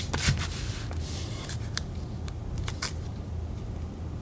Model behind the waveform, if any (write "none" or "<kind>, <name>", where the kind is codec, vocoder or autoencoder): none